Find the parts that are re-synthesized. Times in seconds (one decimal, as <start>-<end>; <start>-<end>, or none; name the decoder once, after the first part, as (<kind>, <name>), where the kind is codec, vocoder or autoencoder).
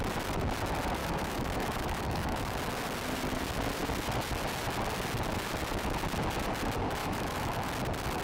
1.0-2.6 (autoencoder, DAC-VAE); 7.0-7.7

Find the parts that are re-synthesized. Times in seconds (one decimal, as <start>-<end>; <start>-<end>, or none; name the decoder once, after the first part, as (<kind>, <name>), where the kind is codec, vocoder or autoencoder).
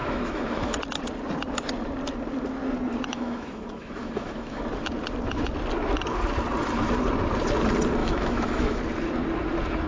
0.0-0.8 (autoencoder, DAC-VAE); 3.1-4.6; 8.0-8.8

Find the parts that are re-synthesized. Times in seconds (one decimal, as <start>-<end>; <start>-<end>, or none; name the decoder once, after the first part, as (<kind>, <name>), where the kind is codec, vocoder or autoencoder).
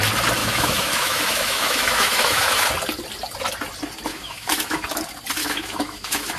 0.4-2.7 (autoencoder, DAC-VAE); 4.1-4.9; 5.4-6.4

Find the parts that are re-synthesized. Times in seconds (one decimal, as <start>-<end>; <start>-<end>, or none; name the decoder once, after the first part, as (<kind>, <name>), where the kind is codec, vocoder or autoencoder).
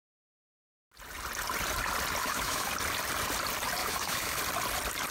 2.2-2.7 (autoencoder, DAC-VAE); 3.8-4.4